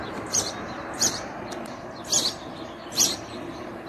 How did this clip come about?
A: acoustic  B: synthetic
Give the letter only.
B